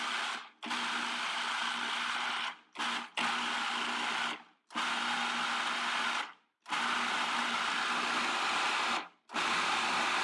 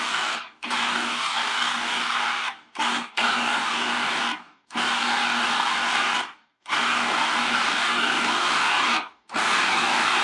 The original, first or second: first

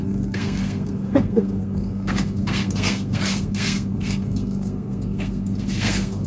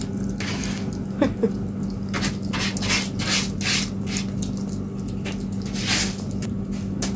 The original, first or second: second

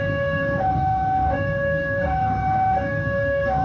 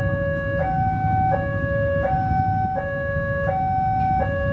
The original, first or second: second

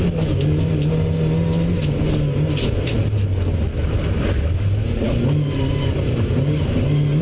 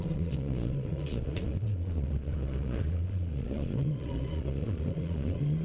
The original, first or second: first